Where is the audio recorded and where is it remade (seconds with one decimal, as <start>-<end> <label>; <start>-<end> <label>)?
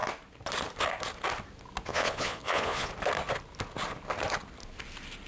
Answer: 0.0-1.9 recorded; 1.9-2.9 remade; 2.9-5.3 recorded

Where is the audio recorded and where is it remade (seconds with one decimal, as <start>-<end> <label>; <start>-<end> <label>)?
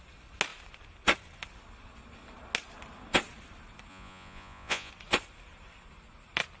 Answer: 0.0-3.9 recorded; 3.9-4.9 remade; 4.9-6.6 recorded